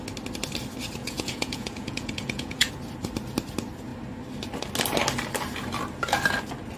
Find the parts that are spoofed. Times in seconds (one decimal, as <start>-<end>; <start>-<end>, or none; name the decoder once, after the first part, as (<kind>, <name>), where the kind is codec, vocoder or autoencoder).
1.0-2.7 (vocoder, Vocos)